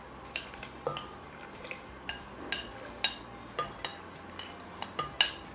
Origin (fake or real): real